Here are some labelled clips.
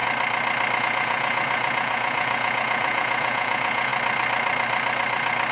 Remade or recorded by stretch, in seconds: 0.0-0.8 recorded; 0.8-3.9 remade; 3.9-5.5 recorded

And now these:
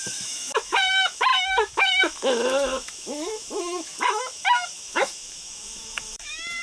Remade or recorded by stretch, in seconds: 0.0-6.6 remade

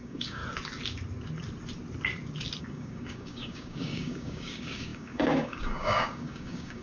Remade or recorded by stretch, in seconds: 0.0-0.4 remade; 0.4-2.6 recorded; 2.6-6.8 remade

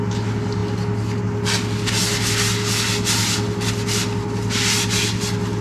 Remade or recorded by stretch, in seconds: 0.0-5.6 recorded

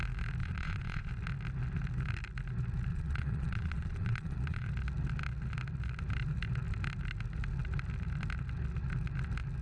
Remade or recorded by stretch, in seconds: 0.0-0.4 recorded; 0.4-1.1 remade; 1.1-2.9 recorded; 2.9-4.7 remade; 4.7-9.6 recorded

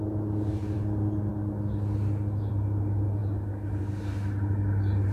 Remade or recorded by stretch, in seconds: 0.0-5.1 recorded

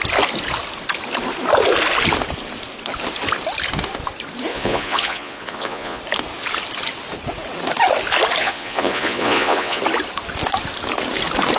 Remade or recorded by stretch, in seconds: 0.0-4.5 recorded; 4.5-6.0 remade; 6.0-8.4 recorded; 8.4-9.8 remade; 9.8-11.6 recorded

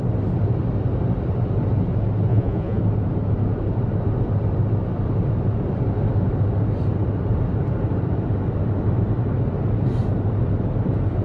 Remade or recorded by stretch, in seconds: 0.0-2.3 recorded; 2.3-2.8 remade; 2.8-11.2 recorded